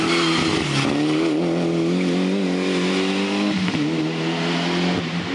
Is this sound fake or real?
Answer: real